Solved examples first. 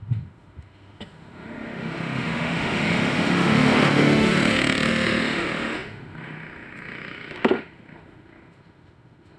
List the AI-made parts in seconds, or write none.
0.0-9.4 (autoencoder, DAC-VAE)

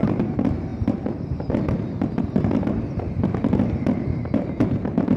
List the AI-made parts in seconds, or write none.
0.0-5.2 (vocoder, BigVGAN v2)